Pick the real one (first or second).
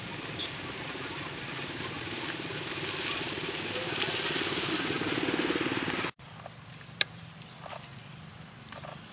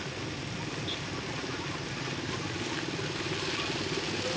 second